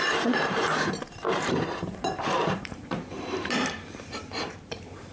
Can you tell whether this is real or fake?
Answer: fake